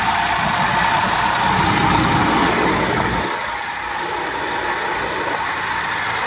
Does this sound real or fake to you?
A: real